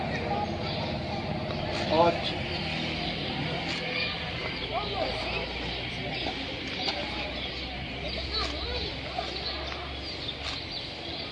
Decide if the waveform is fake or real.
real